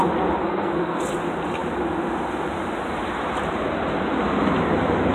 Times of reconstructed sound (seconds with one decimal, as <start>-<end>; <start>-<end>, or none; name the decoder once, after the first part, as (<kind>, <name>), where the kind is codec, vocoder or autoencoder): 0.4-1.0 (codec, SNAC)